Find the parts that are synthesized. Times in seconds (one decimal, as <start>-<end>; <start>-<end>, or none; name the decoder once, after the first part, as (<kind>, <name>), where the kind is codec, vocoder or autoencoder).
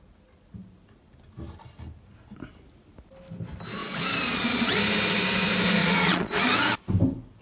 3.8-4.7 (vocoder, Vocos); 5.8-6.4